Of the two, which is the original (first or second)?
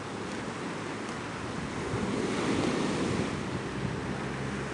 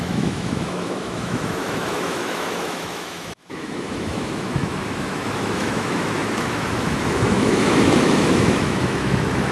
first